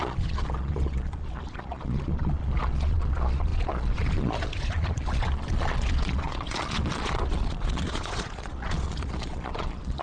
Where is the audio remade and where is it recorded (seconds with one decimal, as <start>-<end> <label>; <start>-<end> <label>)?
0.0-10.0 remade